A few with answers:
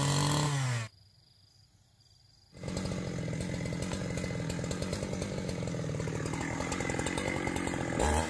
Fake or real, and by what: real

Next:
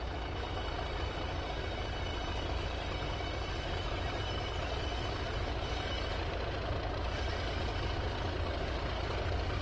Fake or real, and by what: real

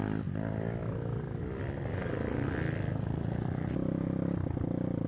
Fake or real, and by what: real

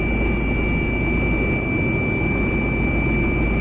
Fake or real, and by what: real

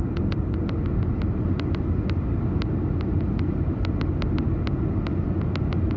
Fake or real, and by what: real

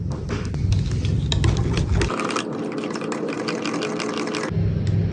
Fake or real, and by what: real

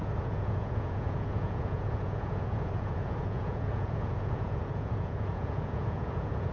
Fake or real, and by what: fake, vocoder, Vocos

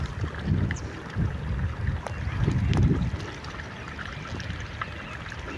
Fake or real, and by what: real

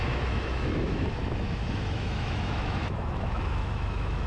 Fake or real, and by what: fake, autoencoder, DAC-VAE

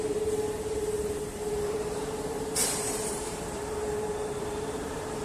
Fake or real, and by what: fake, vocoder, BigVGAN v2